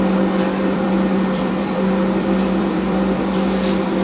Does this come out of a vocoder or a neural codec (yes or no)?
yes